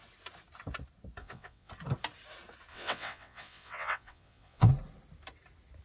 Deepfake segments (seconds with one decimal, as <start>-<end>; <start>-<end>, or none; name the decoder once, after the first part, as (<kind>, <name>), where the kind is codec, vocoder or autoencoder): 1.2-1.7 (vocoder, WaveNeXt); 2.7-4.7